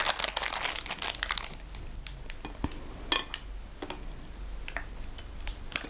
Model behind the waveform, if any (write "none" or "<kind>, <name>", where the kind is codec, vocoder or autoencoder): none